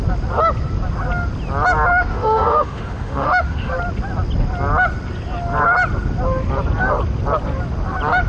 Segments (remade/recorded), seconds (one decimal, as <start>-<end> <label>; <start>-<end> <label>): 0.0-1.9 recorded; 1.9-3.7 remade; 3.7-8.3 recorded